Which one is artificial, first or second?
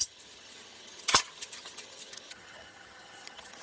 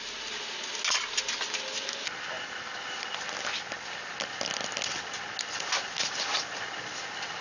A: first